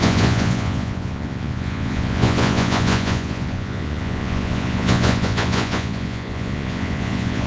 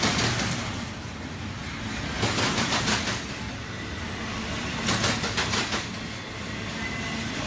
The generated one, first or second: first